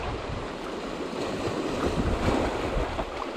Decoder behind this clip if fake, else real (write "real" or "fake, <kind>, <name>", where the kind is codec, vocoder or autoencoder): real